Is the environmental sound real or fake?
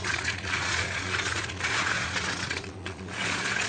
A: fake